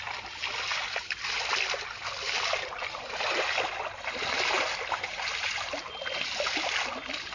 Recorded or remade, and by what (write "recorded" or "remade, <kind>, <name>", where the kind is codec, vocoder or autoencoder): recorded